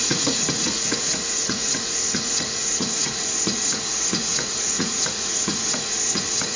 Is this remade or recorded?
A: remade